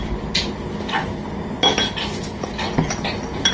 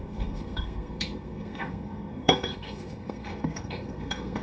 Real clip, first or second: first